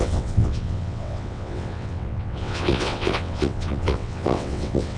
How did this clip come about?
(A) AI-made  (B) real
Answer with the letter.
A